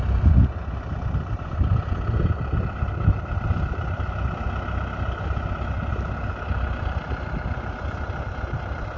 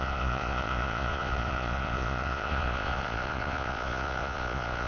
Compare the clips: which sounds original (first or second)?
first